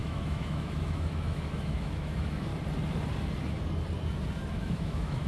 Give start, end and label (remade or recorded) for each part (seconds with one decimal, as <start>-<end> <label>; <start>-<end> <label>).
0.0-2.5 remade; 2.5-4.5 recorded; 4.5-5.3 remade